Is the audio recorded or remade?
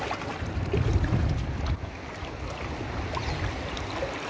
recorded